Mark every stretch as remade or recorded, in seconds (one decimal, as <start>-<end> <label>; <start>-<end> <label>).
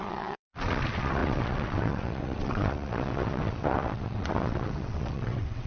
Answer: 0.0-5.7 remade